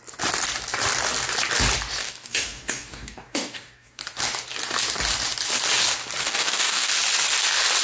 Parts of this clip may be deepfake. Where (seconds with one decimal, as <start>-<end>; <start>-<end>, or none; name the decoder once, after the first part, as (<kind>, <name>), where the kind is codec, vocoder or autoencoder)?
2.0-4.0 (codec, DAC); 6.2-6.9